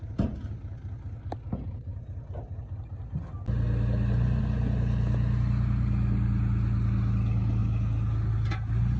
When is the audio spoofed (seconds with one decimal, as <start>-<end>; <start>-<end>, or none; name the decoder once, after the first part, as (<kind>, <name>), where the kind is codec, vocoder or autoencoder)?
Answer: none